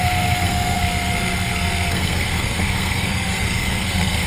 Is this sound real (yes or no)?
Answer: no